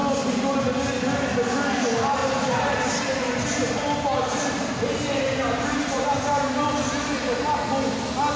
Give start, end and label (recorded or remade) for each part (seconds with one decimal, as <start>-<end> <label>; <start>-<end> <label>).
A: 0.0-2.2 recorded; 2.2-6.2 remade; 6.2-8.4 recorded